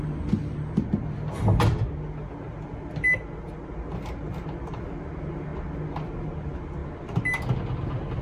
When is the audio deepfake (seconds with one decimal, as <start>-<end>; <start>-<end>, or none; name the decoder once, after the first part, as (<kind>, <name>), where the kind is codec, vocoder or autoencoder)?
none